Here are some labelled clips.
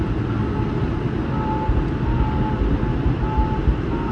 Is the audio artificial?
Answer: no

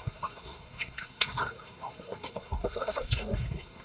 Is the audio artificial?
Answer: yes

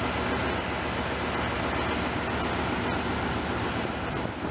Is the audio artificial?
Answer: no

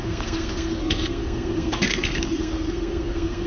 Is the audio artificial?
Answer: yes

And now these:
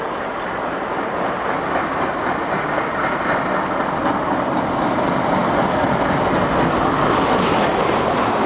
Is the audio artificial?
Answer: no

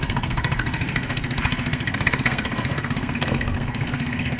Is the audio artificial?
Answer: yes